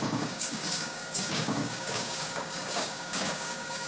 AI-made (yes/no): yes